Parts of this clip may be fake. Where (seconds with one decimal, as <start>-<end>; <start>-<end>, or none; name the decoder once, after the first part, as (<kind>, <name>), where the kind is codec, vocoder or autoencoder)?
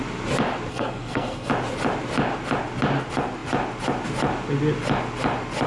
0.7-1.5 (codec, SNAC)